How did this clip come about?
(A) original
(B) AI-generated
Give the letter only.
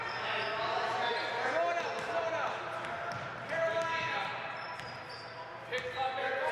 A